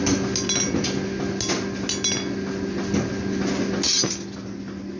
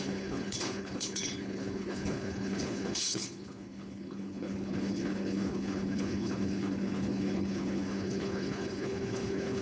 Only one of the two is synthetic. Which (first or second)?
second